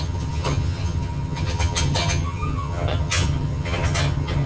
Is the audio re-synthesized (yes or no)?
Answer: yes